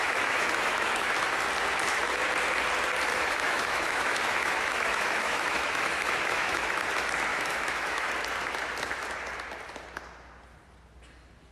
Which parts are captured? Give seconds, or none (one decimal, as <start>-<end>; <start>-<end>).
1.1-3.1; 6.8-7.3; 8.1-11.5